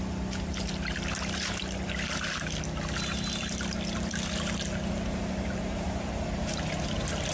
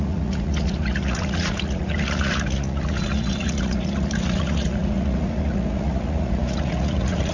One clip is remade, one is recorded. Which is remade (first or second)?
second